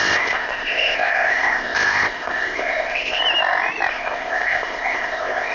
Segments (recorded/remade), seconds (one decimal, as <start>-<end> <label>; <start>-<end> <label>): 0.0-3.2 remade; 3.2-3.9 recorded; 3.9-5.5 remade

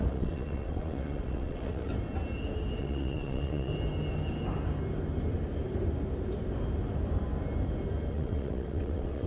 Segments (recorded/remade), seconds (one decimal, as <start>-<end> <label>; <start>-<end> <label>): 0.0-1.9 remade; 1.9-2.8 recorded; 2.8-3.7 remade; 3.7-8.1 recorded; 8.1-9.3 remade